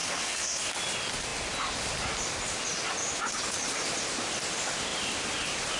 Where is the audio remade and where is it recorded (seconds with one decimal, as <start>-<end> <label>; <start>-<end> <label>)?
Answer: 0.0-0.7 remade; 0.7-5.8 recorded

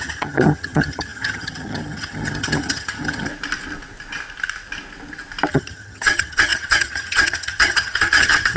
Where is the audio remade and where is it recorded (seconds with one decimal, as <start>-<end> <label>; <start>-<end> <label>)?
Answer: 0.0-3.3 remade; 3.3-5.5 recorded; 5.5-8.6 remade